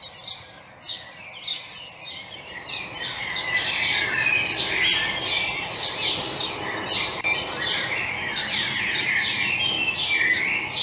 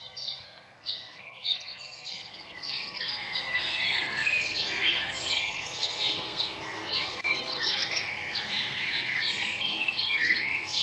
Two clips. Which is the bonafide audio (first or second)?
first